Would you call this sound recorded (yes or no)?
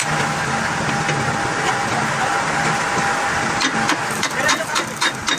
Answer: yes